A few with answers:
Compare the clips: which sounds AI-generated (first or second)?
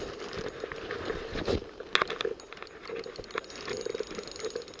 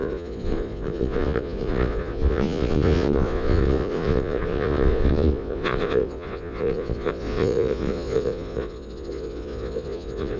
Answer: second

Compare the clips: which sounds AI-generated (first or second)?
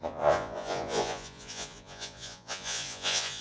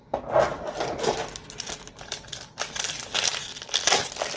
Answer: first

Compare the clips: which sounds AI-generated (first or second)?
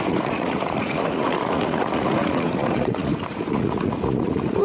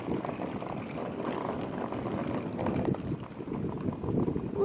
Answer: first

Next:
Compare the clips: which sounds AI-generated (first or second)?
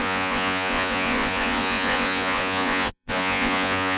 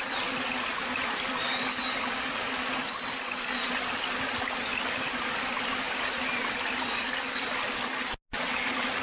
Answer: first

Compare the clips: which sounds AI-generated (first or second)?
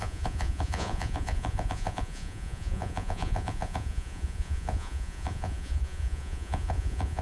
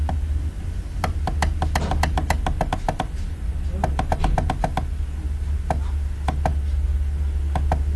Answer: first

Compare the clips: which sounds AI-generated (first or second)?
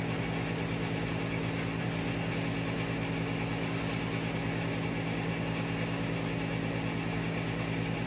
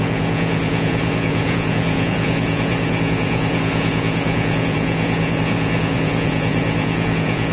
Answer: second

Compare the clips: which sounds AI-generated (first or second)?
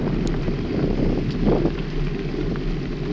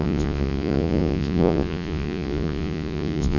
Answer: second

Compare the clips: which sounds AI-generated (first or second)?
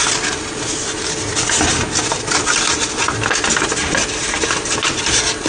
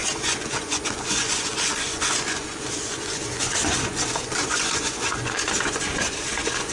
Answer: second